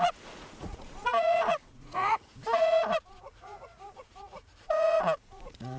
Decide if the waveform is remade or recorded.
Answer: remade